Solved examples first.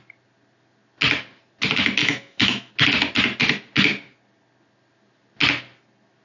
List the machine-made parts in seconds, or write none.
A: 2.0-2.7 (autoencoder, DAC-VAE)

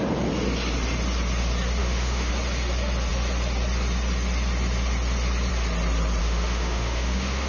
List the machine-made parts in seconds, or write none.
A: 1.8-2.3 (autoencoder, DAC-VAE); 6.2-7.5

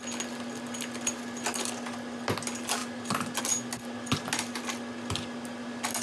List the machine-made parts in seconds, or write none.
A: none

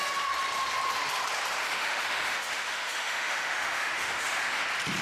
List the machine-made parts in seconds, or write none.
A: 1.6-4.6 (autoencoder, DAC-VAE)